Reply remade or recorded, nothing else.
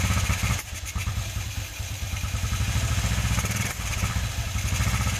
recorded